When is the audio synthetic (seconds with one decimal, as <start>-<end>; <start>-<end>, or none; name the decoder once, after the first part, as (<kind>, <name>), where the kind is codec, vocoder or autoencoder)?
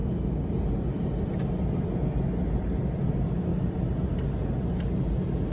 none